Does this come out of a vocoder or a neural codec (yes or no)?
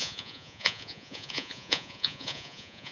yes